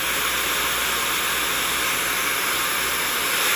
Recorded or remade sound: recorded